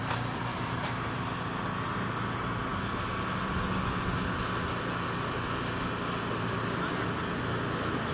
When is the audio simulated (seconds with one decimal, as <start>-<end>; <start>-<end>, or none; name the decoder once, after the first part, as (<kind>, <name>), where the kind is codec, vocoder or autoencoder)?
0.5-1.2 (vocoder, BigVGAN v2)